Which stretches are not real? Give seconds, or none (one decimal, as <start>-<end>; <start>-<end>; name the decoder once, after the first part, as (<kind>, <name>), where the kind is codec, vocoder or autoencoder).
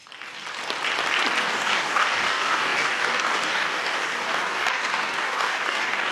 1.4-6.1 (codec, DAC)